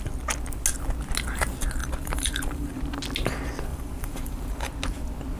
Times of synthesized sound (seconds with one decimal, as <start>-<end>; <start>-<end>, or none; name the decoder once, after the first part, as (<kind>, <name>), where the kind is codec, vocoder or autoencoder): 1.8-2.8 (vocoder, BigVGAN v2); 3.7-4.7